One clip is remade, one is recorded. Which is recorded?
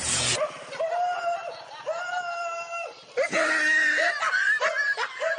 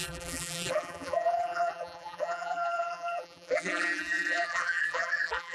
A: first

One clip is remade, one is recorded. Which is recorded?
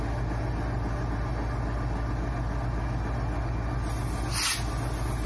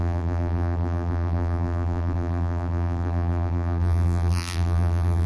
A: first